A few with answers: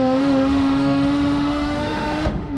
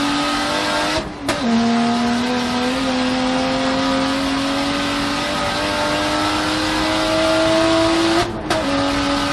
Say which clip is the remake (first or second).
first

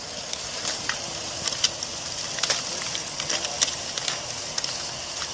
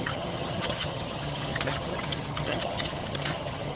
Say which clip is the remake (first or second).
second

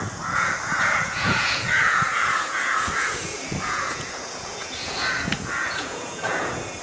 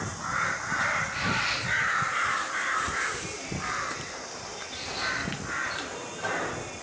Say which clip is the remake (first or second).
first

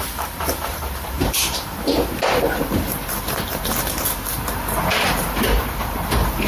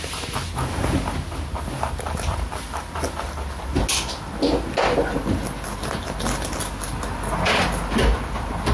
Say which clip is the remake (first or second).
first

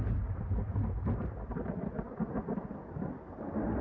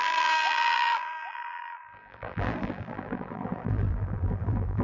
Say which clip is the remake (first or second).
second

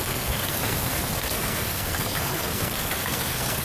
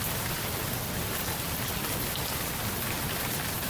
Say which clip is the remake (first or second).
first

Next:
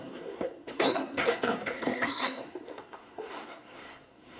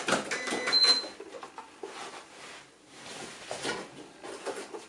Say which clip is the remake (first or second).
first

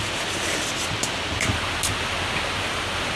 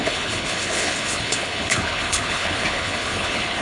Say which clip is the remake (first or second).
second